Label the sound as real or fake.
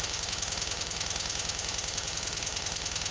fake